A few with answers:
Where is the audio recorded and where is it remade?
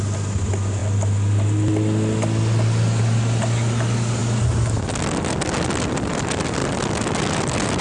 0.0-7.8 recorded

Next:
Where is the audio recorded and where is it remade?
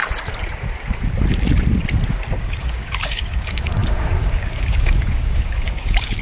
0.0-2.4 recorded; 2.4-6.2 remade